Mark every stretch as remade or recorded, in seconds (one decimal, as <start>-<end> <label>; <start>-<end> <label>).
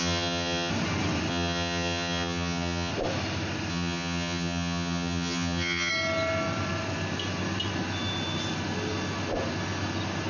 0.0-0.7 remade; 0.7-1.3 recorded; 1.3-2.9 remade; 2.9-3.7 recorded; 3.7-5.9 remade; 5.9-10.3 recorded